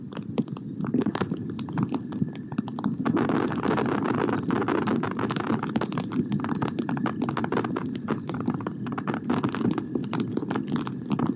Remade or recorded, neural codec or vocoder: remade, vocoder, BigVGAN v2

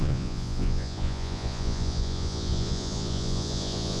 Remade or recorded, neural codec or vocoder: remade, vocoder, Vocos